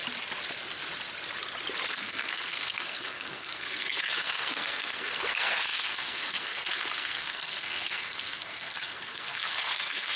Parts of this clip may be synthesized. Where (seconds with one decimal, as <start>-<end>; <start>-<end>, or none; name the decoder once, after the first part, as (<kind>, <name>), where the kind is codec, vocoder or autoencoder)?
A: 1.9-10.2 (codec, SNAC)